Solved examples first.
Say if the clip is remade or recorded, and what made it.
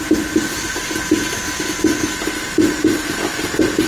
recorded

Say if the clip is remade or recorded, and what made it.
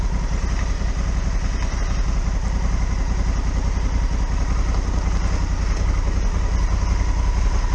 recorded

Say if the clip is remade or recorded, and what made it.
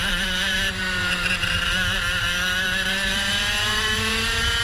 remade, vocoder, BigVGAN v2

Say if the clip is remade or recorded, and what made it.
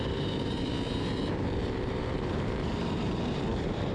remade, vocoder, BigVGAN v2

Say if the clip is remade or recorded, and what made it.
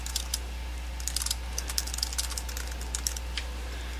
recorded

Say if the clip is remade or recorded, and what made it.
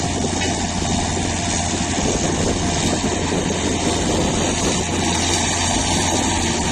recorded